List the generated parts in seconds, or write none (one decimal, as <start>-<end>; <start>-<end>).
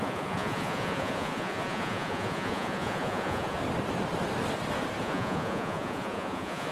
0.0-3.6; 5.0-6.7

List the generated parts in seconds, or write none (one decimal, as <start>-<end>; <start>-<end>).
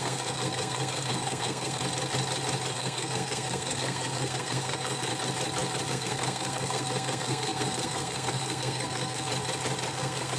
0.0-1.8; 2.7-5.1; 5.9-9.3; 9.9-10.4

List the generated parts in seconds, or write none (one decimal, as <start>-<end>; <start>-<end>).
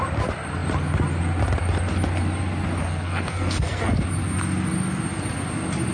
2.8-3.9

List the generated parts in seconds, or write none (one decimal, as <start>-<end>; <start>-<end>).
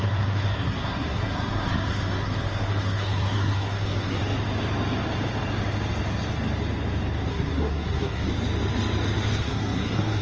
0.0-4.2; 7.3-8.3; 9.4-10.2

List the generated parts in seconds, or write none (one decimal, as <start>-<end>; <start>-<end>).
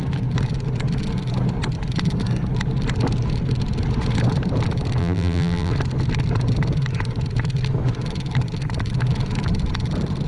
5.0-5.7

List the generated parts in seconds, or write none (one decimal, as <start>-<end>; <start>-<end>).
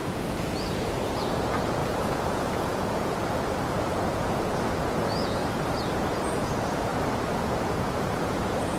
0.0-6.9; 7.5-8.8